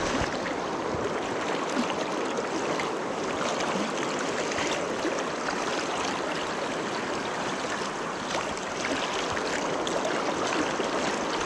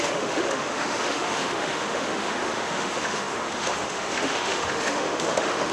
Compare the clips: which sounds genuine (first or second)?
first